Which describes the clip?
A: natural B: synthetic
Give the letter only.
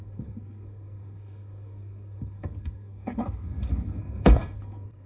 B